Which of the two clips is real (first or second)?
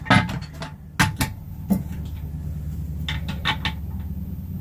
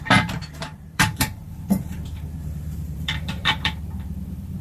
first